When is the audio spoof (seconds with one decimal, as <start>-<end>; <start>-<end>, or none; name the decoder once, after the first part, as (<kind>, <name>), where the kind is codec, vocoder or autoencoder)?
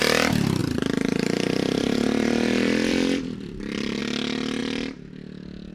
0.6-4.0 (vocoder, BigVGAN v2)